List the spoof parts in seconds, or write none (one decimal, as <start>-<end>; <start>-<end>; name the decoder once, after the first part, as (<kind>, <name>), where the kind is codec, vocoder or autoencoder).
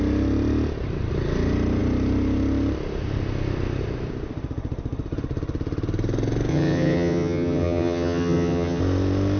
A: 6.5-8.8 (vocoder, HiFi-GAN)